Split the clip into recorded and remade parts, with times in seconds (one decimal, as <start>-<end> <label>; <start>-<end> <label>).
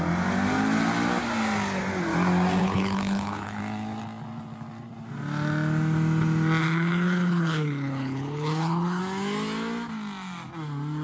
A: 0.0-2.6 recorded; 2.6-3.6 remade; 3.6-6.6 recorded; 6.6-9.0 remade; 9.0-11.0 recorded